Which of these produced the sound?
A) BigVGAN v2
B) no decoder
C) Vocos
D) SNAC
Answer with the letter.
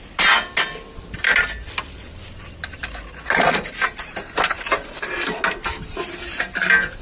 B